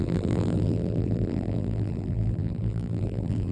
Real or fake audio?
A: fake